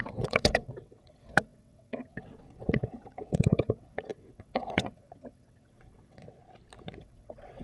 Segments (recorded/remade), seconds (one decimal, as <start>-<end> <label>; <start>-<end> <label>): 0.0-6.4 remade; 6.4-7.0 recorded; 7.0-7.6 remade